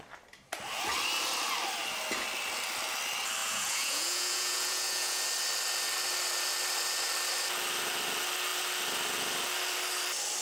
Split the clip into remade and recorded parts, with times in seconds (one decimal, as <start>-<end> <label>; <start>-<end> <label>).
0.0-3.4 recorded; 3.4-5.2 remade; 5.2-10.4 recorded